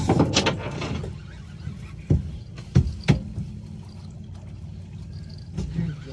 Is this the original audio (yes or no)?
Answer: yes